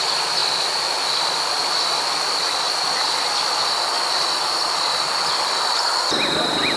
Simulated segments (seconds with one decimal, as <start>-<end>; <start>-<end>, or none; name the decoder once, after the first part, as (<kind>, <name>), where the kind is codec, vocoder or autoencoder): none